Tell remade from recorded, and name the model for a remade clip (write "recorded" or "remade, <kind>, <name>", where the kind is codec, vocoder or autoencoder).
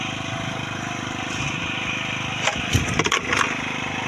recorded